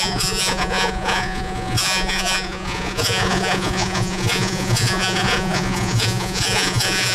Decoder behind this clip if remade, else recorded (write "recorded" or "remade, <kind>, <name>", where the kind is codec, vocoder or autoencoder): remade, vocoder, Vocos